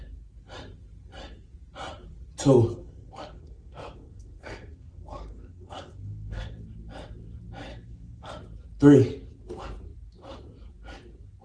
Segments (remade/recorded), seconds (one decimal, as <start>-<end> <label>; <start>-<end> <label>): 0.0-2.7 recorded; 2.7-6.6 remade; 6.6-7.7 recorded; 7.7-8.3 remade; 8.3-11.4 recorded